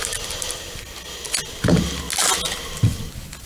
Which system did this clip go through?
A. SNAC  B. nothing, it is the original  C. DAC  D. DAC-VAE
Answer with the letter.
B